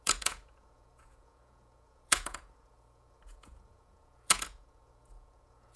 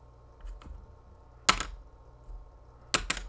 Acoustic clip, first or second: second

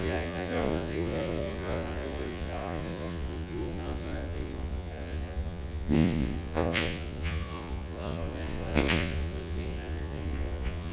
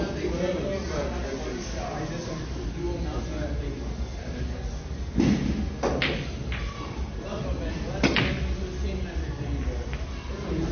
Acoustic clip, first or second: second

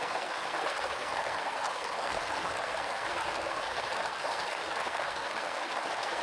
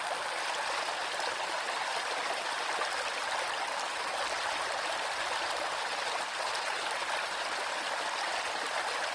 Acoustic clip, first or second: second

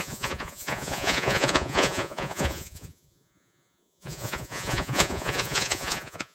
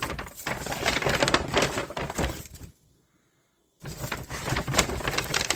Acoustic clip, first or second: second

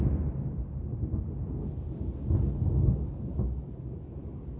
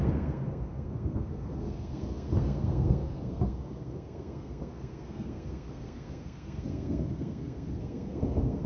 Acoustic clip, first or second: first